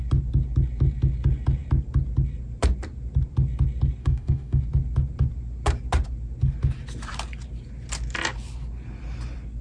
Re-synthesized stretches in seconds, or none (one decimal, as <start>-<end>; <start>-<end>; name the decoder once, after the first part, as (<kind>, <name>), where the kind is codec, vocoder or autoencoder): 4.0-4.6 (autoencoder, DAC-VAE)